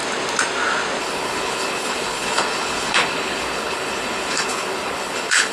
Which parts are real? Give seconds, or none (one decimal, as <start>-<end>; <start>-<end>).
0.0-1.0